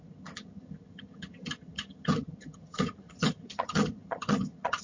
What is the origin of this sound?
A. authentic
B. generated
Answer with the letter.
B